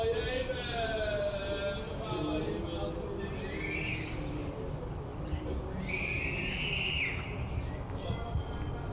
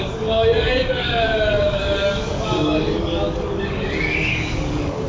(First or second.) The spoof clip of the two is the second